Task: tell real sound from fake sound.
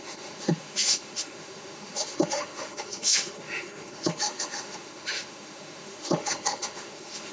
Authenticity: fake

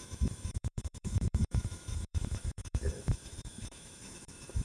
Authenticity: fake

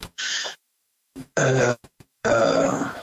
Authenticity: fake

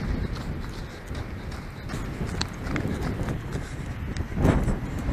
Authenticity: real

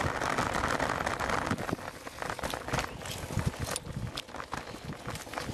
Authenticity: real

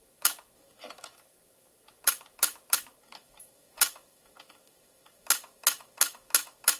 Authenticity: fake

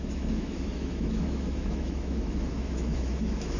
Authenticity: fake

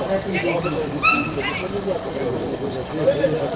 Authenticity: real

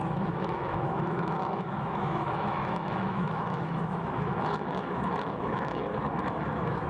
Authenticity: fake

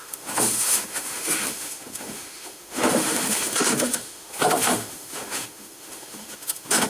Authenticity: fake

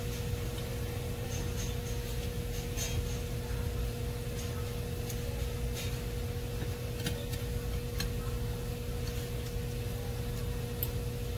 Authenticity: real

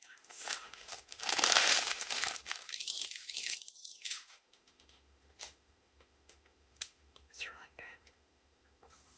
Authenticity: fake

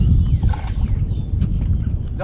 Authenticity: real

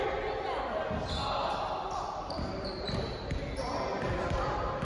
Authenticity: real